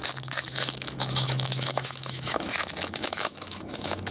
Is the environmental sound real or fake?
fake